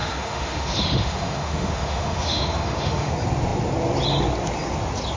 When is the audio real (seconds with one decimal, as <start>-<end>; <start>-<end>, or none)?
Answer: 3.1-5.2